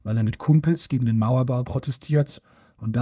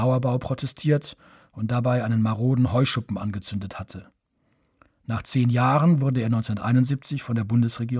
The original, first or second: second